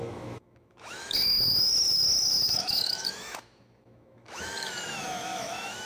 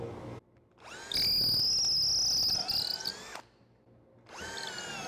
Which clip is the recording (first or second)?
second